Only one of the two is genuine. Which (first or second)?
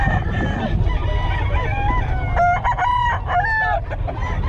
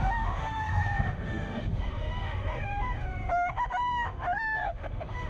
first